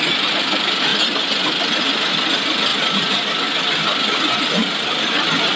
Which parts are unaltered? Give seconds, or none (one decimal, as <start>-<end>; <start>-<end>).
0.0-2.7; 4.1-5.6